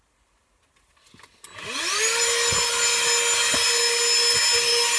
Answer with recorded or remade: recorded